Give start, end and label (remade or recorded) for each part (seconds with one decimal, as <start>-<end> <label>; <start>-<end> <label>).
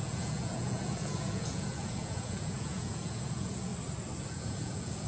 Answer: 0.0-3.7 remade; 3.7-4.2 recorded; 4.2-5.1 remade